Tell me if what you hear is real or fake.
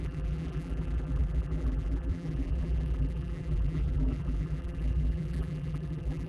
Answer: fake